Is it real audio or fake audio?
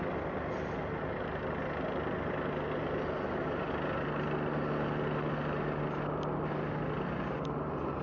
real